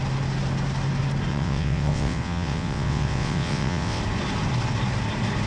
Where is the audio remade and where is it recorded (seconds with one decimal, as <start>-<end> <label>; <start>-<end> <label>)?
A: 0.0-1.3 recorded; 1.3-4.0 remade; 4.0-5.5 recorded

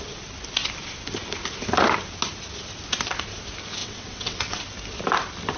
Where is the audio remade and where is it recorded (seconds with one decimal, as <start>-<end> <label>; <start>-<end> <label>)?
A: 0.0-3.8 recorded; 3.8-4.6 remade; 4.6-5.6 recorded